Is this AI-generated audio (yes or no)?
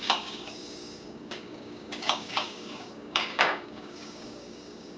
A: yes